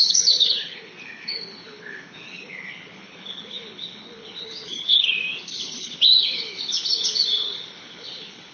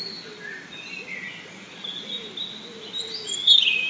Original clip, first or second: second